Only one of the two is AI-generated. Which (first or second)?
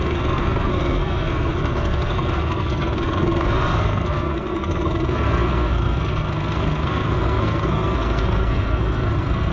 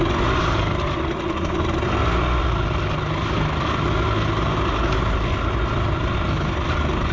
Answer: first